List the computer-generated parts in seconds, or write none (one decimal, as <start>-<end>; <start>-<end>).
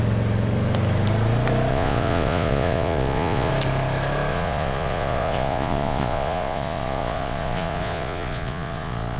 1.7-3.5; 4.3-9.2